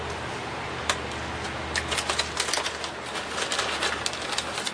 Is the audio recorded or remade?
recorded